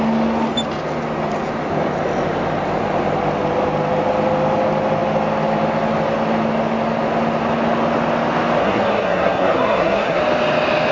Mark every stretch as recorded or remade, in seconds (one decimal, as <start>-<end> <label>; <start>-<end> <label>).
0.0-8.6 recorded; 8.6-10.2 remade; 10.2-10.9 recorded